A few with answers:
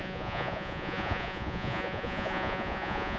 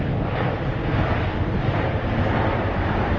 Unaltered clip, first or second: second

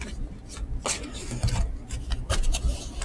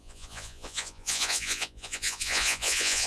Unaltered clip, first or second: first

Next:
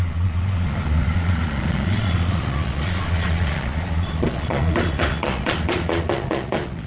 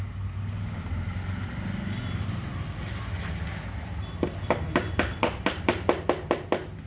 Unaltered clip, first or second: second